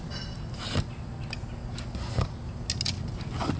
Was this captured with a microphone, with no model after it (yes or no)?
yes